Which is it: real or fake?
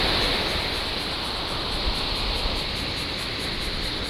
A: real